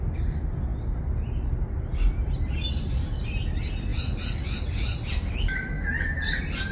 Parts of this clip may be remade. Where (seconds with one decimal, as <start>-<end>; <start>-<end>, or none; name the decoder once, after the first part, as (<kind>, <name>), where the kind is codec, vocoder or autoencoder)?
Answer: none